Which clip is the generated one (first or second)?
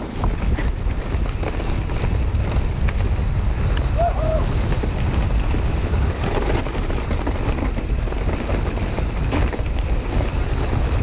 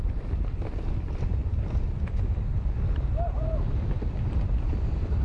second